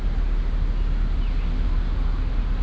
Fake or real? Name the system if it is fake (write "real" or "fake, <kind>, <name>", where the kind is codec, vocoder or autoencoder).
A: real